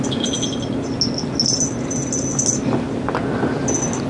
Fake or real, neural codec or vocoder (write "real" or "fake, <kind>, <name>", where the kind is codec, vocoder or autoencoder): real